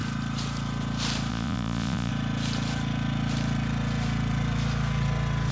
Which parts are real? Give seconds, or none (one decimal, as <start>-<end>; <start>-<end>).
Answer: 0.0-1.3; 2.1-5.5